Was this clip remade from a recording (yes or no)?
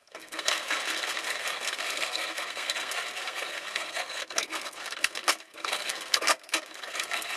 yes